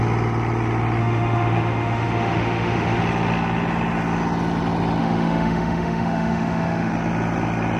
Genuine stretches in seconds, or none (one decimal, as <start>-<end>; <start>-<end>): 0.0-1.0; 3.0-5.0; 6.9-7.8